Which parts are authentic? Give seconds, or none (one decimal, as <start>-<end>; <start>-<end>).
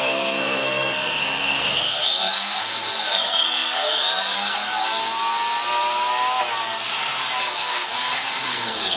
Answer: 5.0-7.4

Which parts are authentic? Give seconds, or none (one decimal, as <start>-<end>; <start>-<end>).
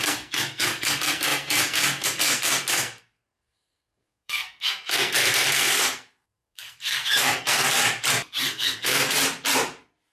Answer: 7.7-8.4; 9.2-10.1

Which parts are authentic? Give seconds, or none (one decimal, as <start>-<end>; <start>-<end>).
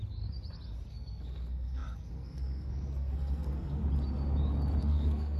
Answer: 0.0-0.9; 3.8-4.8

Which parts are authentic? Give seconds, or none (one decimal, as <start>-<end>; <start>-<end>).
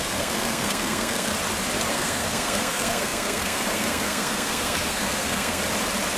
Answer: 1.3-1.9; 5.6-6.2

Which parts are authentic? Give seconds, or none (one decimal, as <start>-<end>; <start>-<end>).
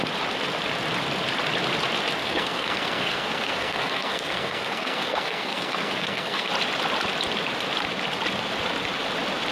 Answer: 0.0-2.2; 6.5-9.5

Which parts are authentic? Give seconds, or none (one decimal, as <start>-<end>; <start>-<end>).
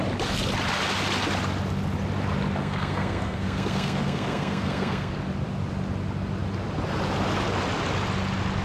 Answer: 0.0-2.6; 5.1-8.6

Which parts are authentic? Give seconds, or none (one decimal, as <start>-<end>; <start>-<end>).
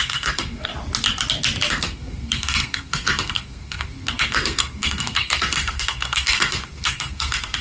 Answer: 0.7-1.7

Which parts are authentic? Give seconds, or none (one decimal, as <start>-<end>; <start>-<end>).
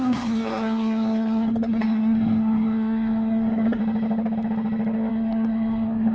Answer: 3.8-5.1